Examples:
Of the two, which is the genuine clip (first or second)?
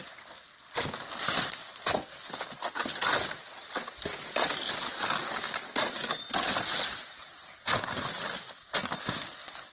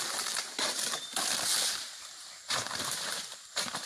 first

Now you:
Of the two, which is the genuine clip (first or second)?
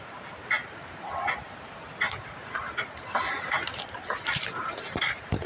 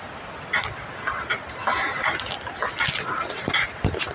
second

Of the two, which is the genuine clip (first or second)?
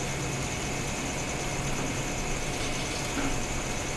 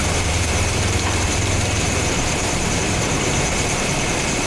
first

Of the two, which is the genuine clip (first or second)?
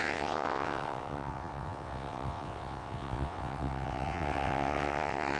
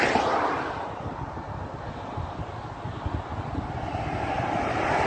second